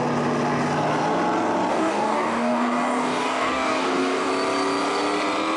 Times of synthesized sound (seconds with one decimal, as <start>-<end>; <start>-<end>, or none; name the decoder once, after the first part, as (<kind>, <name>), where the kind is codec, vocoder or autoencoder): 1.7-4.3 (codec, DAC)